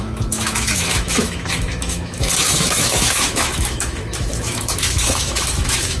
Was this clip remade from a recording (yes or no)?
yes